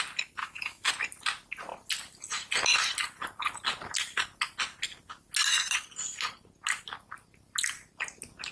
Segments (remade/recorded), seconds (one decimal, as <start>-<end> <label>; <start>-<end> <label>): 0.0-0.4 recorded; 0.4-0.9 remade; 0.9-8.5 recorded